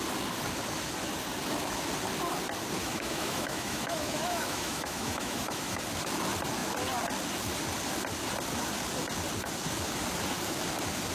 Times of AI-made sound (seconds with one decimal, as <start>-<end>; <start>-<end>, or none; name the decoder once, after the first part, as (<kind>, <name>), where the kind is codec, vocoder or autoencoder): 2.8-5.8 (autoencoder, DAC-VAE)